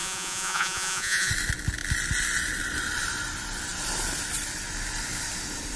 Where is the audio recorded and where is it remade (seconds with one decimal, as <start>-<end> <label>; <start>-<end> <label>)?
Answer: 0.0-1.3 remade; 1.3-5.8 recorded